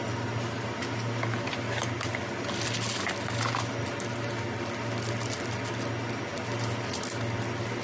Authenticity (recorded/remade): recorded